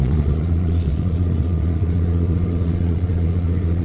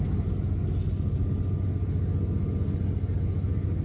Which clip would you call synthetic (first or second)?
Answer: first